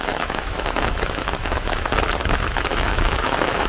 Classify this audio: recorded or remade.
remade